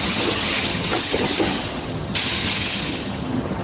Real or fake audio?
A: fake